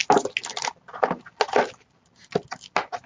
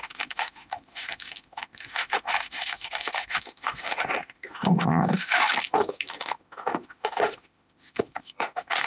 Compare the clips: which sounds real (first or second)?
first